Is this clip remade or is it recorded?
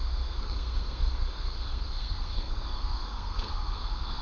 remade